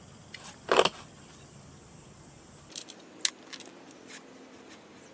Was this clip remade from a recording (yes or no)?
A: no